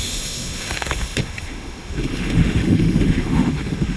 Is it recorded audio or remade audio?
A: remade